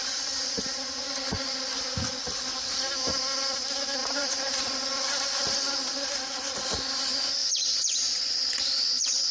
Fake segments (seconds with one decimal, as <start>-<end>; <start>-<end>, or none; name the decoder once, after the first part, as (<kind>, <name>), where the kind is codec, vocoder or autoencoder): 0.0-1.1 (vocoder, BigVGAN v2); 4.0-4.6; 7.4-8.2